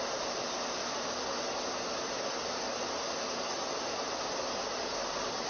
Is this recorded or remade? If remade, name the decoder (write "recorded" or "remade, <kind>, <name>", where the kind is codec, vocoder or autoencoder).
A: recorded